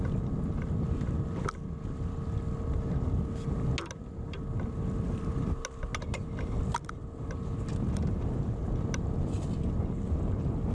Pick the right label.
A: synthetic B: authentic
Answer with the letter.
B